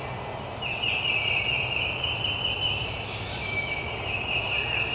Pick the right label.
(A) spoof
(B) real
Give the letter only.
B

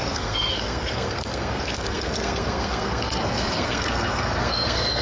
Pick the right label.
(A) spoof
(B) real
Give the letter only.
A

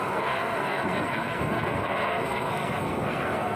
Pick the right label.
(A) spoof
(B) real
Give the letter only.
A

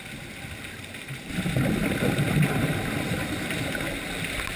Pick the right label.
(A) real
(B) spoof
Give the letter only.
A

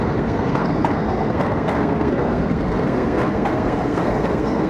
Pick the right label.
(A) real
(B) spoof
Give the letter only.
B